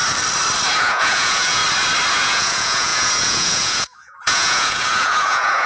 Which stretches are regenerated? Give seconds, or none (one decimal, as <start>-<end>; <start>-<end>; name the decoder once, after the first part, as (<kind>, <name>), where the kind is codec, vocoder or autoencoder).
0.8-1.6 (vocoder, Vocos); 2.1-5.7